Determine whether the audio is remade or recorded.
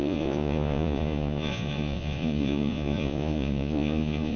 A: remade